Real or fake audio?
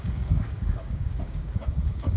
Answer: fake